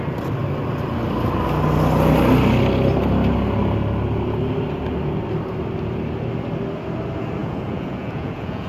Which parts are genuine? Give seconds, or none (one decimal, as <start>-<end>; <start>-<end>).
0.0-7.4